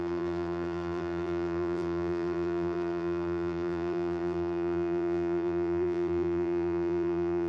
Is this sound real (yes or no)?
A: no